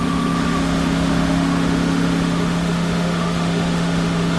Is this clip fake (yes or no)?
yes